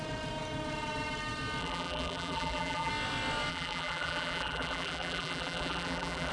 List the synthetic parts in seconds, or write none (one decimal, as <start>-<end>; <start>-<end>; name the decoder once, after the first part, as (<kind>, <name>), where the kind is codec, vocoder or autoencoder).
1.6-2.9 (vocoder, BigVGAN v2); 3.5-6.3